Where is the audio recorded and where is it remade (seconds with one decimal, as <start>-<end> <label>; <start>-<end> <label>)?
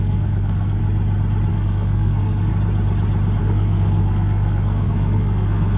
0.0-0.8 remade; 0.8-1.5 recorded; 1.5-2.5 remade; 2.5-3.4 recorded; 3.4-5.8 remade